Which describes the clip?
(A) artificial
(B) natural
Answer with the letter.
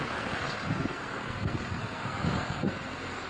A